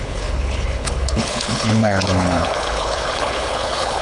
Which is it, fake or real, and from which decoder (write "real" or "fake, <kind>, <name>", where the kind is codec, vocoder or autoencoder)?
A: fake, codec, HILCodec